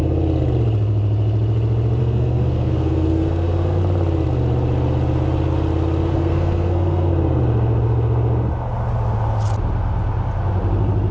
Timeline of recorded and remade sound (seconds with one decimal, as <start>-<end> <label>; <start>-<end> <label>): 0.0-2.0 recorded; 2.0-3.8 remade; 3.8-6.1 recorded; 6.1-7.1 remade; 7.1-11.1 recorded